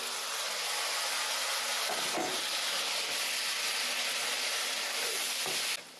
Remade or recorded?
recorded